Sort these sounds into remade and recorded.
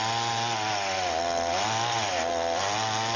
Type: recorded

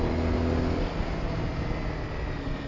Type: recorded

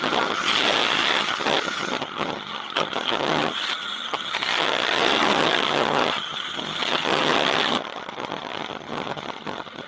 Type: remade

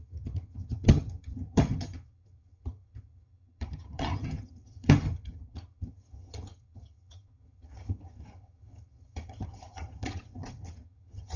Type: remade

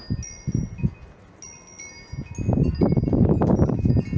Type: recorded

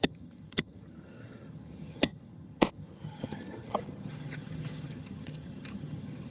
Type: remade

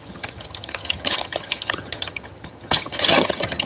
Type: remade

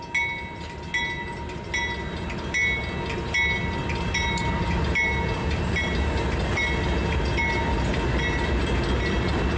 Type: recorded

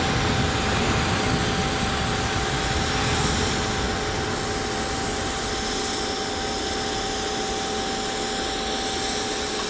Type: recorded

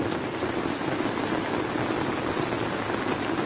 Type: recorded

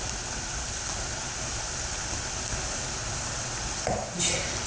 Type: recorded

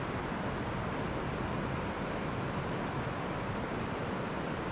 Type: recorded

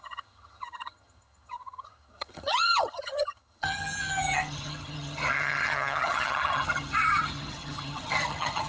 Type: remade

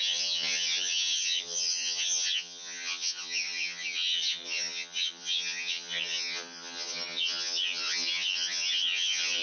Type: remade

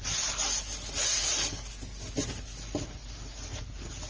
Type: recorded